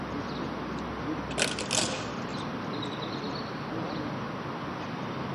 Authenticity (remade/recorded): recorded